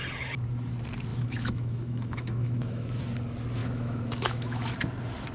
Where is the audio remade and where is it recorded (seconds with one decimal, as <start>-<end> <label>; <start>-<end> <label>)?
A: 0.0-1.1 recorded; 1.1-3.0 remade; 3.0-3.6 recorded; 3.6-4.7 remade; 4.7-5.3 recorded